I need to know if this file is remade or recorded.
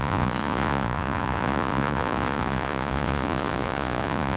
remade